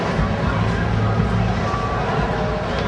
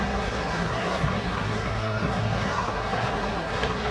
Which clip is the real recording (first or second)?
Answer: first